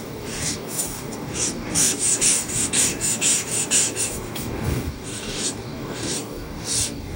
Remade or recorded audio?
remade